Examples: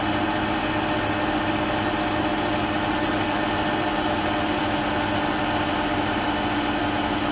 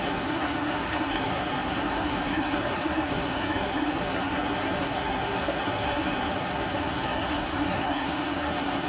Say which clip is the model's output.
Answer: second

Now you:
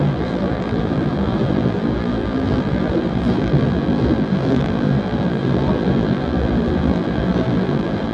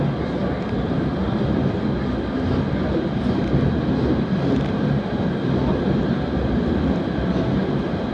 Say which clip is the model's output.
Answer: first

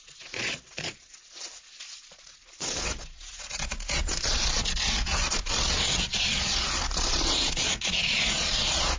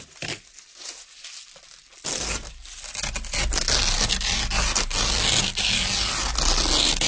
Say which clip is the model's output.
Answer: first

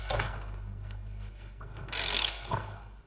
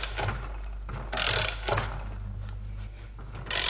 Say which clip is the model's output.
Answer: first